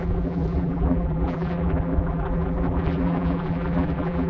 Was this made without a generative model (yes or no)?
no